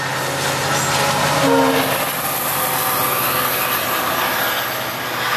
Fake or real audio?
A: real